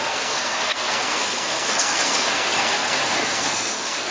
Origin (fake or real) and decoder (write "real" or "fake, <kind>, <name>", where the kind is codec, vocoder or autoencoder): fake, codec, SNAC